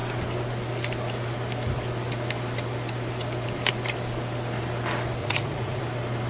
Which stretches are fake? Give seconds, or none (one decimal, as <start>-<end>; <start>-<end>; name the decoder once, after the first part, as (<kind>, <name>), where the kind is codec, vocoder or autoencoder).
5.2-5.8 (vocoder, Vocos)